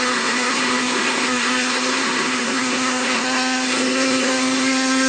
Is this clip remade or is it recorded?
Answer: remade